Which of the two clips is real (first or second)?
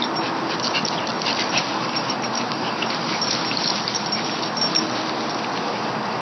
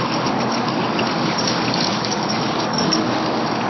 first